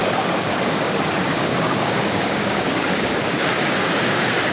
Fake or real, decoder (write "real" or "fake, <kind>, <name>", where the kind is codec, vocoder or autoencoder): fake, codec, DAC